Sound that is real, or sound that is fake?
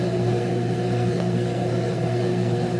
fake